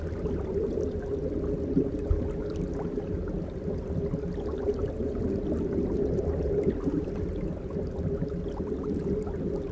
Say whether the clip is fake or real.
real